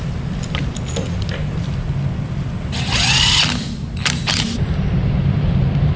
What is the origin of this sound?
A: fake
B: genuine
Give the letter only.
B